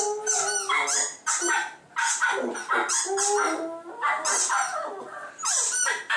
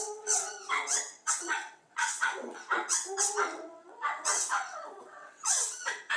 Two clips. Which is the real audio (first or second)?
first